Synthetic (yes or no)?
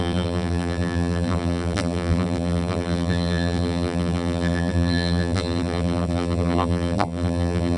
yes